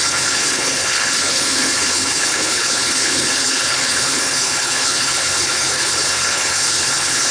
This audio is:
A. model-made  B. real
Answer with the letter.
A